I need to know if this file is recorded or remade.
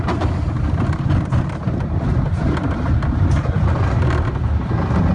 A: recorded